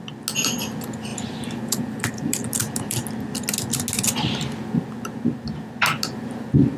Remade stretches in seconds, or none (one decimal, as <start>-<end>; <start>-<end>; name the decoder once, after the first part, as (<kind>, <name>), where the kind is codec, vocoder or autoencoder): 1.1-3.0 (vocoder, BigVGAN v2)